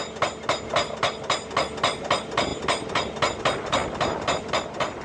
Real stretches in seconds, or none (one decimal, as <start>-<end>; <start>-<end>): 0.0-5.0